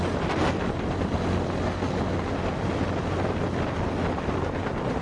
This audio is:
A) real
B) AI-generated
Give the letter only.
A